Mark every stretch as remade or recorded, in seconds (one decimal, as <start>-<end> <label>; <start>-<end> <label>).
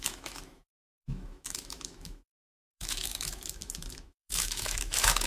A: 0.0-5.3 remade